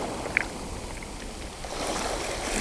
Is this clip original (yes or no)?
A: yes